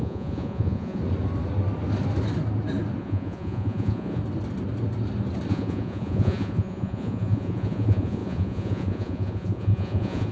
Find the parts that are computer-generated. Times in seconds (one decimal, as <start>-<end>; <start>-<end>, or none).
0.0-1.0; 3.0-4.2; 5.5-10.3